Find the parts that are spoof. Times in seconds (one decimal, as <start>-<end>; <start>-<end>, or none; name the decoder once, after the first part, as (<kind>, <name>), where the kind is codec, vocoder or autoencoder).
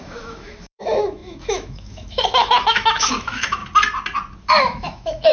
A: 0.0-3.6 (autoencoder, DAC-VAE); 4.6-5.3